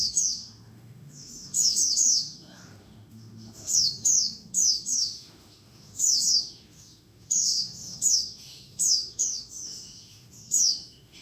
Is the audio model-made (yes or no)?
yes